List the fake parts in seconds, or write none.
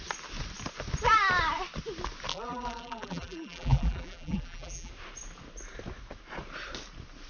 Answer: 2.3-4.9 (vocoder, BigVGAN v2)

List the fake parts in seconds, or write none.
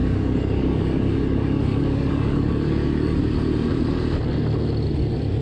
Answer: 0.0-3.2 (codec, DAC)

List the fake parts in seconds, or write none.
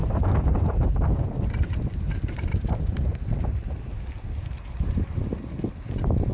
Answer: 0.0-3.8 (vocoder, BigVGAN v2)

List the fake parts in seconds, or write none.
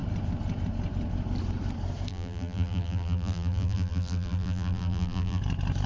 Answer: 2.1-5.4 (vocoder, BigVGAN v2)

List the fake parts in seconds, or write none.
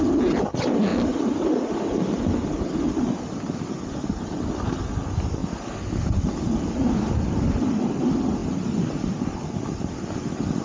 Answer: 0.9-1.7 (vocoder, BigVGAN v2)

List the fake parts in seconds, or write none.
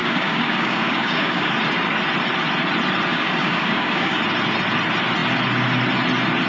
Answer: 0.0-1.5 (codec, DAC); 3.1-4.2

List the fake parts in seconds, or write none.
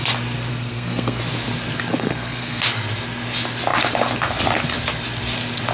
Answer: 0.5-1.2 (codec, SNAC); 1.9-2.6